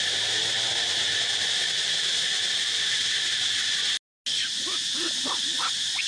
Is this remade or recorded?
recorded